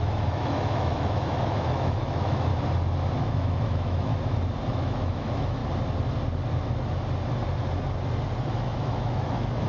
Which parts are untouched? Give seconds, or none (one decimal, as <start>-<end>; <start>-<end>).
2.5-3.2; 4.1-4.7; 5.6-8.5